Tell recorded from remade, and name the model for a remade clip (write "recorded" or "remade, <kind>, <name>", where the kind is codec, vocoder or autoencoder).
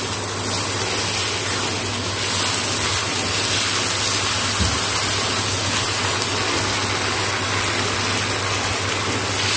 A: recorded